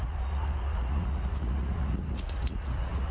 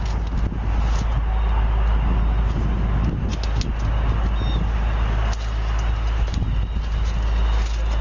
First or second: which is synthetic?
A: first